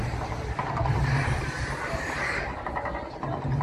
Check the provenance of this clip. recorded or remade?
recorded